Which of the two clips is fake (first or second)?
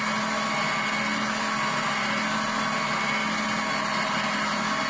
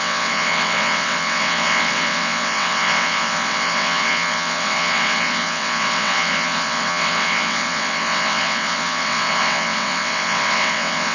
second